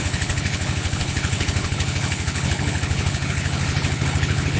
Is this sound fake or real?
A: fake